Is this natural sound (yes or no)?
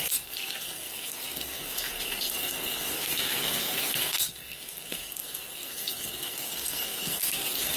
no